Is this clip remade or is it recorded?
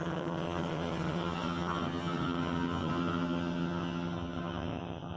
remade